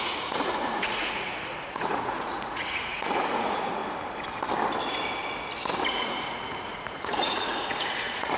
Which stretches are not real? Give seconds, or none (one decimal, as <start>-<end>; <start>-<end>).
0.0-3.8; 5.9-8.4

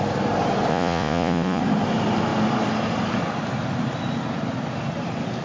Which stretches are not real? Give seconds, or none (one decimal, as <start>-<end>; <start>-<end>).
0.7-1.6

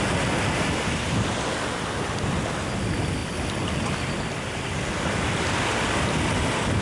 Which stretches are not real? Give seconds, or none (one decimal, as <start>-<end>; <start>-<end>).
none

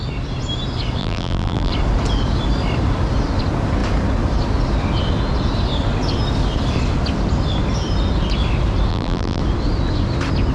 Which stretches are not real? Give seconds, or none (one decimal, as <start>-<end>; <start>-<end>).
1.0-1.7; 8.9-9.4

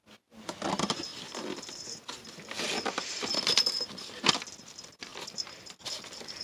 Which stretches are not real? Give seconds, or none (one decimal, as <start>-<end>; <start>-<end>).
1.1-4.3; 5.1-6.4